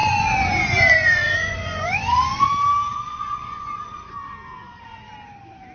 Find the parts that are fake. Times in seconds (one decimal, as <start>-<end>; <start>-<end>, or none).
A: 0.0-2.5; 2.9-4.1